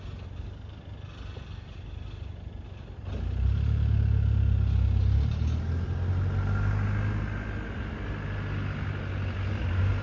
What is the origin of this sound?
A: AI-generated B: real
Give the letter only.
B